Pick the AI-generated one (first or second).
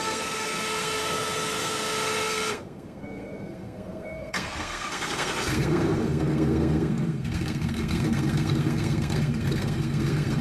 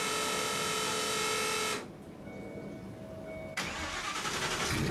first